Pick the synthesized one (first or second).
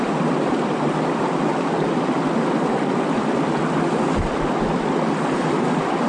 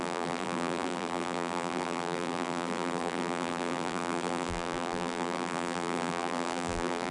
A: second